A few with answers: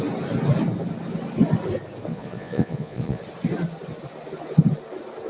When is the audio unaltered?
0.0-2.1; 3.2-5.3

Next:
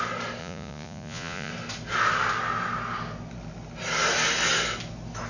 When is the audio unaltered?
0.0-0.4; 1.5-5.3

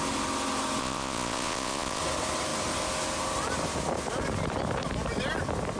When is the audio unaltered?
0.0-0.8; 2.0-5.8

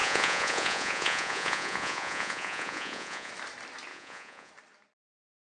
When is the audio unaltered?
3.3-3.9; 4.5-5.5

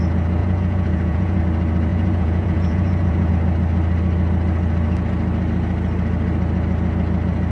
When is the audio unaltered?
0.0-0.4; 1.4-1.9; 3.3-7.5

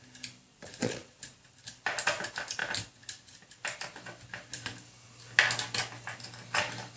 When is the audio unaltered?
0.0-0.5; 1.5-7.0

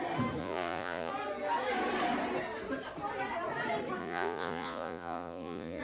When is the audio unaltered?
0.0-0.4; 1.1-4.0